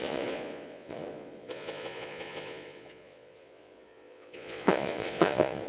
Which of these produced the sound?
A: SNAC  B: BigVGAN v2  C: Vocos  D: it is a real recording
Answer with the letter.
C